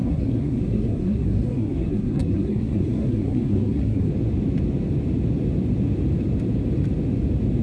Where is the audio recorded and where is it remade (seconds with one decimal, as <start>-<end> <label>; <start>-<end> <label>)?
0.0-4.1 remade; 4.1-7.6 recorded